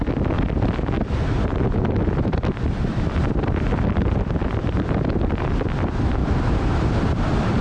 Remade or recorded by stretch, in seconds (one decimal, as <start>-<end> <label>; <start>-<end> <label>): 0.0-7.6 remade